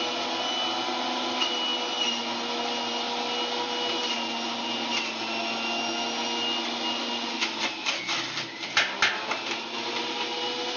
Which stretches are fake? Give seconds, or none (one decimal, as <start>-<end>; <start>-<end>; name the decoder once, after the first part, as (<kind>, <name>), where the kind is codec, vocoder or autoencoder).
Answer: none